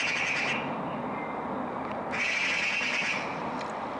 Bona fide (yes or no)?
yes